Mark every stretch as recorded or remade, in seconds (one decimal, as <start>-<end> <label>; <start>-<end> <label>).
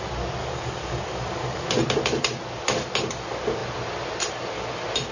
0.0-0.4 recorded; 0.4-1.7 remade; 1.7-5.1 recorded